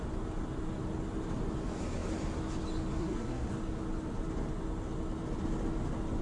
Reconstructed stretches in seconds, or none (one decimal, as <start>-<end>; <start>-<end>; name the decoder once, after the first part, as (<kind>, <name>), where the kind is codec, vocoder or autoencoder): 3.0-3.5 (codec, SNAC)